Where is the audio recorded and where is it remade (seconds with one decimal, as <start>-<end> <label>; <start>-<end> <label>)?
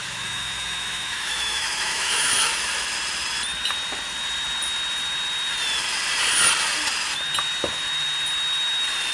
0.0-2.5 remade; 2.5-9.1 recorded